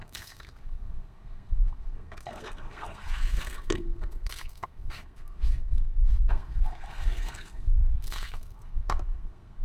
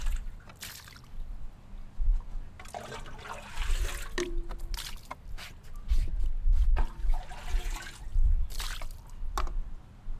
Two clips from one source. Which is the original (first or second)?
second